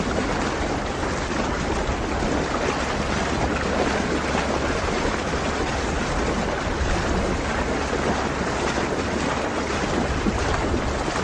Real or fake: real